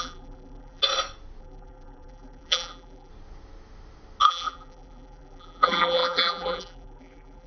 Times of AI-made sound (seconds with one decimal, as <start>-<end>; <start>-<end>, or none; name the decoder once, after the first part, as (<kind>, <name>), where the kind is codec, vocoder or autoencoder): 0.0-0.8 (vocoder, BigVGAN v2); 1.4-3.1; 4.3-7.5